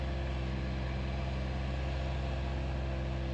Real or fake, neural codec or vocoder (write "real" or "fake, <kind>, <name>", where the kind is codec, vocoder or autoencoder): real